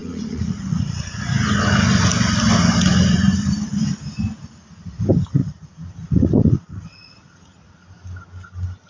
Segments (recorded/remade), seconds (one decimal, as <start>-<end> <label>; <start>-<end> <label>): 0.0-1.3 remade; 1.3-5.4 recorded; 5.4-7.9 remade; 7.9-8.9 recorded